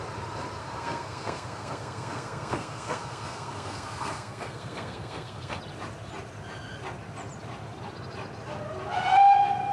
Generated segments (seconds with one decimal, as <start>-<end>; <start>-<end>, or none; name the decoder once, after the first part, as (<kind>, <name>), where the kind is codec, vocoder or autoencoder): 0.6-5.6 (codec, SNAC)